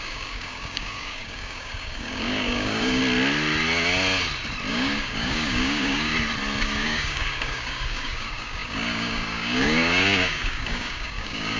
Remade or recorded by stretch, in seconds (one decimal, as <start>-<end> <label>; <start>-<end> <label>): 0.0-3.0 remade; 3.0-4.7 recorded; 4.7-6.1 remade; 6.1-6.6 recorded; 6.6-11.6 remade